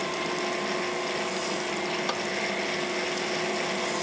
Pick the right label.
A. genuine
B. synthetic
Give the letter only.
A